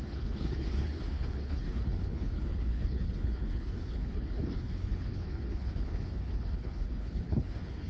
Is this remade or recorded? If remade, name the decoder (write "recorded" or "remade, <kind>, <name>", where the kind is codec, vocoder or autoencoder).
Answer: remade, codec, HILCodec